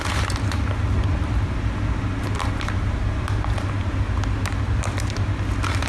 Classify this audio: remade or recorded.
recorded